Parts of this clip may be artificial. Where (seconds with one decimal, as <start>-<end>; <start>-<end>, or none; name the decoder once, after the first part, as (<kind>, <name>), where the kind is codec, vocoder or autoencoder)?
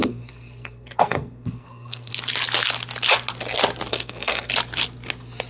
0.0-2.1 (codec, SNAC); 3.9-4.5